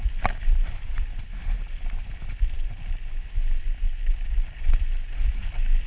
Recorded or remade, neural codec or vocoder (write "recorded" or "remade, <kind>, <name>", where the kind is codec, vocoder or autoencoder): recorded